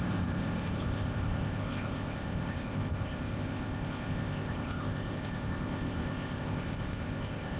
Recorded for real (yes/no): no